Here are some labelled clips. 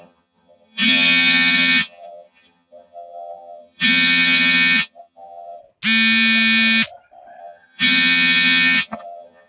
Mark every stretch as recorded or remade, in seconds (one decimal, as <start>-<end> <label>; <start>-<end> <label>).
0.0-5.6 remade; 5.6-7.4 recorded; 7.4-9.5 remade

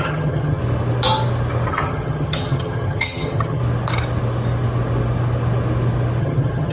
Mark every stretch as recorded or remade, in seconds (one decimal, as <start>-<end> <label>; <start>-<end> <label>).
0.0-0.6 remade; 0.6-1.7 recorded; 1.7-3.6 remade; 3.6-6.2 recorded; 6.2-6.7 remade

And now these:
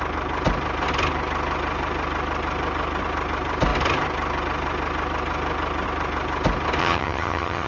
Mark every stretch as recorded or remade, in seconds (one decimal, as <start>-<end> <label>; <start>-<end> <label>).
0.0-6.8 recorded; 6.8-7.7 remade